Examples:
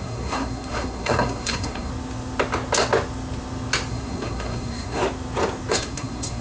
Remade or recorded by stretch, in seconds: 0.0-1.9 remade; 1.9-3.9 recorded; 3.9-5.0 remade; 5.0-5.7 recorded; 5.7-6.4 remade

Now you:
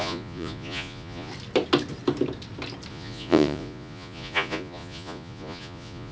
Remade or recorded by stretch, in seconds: 0.0-1.3 remade; 1.3-2.9 recorded; 2.9-6.1 remade

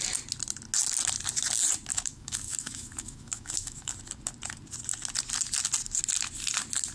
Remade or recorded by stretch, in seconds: 0.0-1.9 recorded; 1.9-3.9 remade; 3.9-6.9 recorded

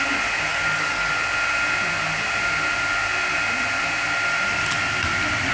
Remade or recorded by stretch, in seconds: 0.0-0.5 recorded; 0.5-1.1 remade; 1.1-5.5 recorded

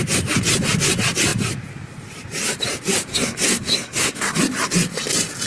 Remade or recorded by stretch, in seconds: 0.0-3.1 recorded; 3.1-4.4 remade; 4.4-5.5 recorded

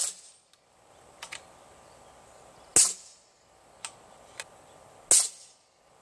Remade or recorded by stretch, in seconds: 0.0-6.0 recorded

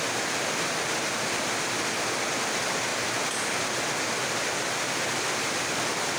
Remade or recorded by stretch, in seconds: 0.0-6.2 recorded